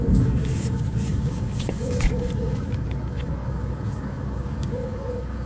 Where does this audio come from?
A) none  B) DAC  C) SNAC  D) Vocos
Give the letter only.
B